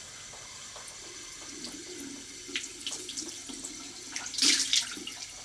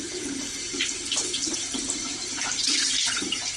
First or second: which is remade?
second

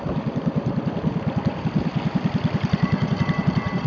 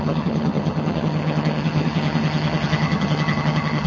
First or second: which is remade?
second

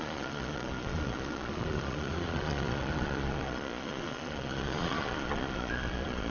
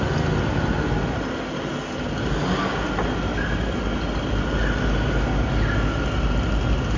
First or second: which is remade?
first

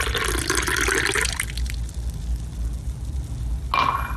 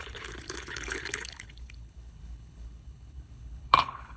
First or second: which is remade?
second